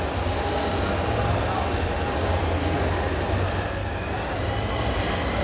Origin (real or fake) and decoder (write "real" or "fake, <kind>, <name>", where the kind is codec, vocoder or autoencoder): real